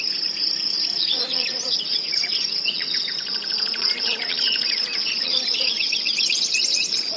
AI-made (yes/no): yes